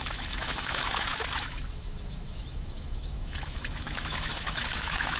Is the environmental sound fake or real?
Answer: fake